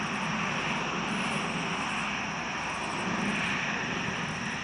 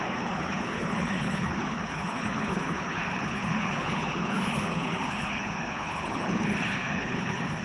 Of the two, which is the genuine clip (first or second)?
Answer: first